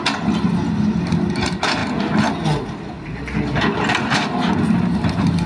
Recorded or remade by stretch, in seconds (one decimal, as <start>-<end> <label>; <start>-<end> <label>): 0.0-5.5 recorded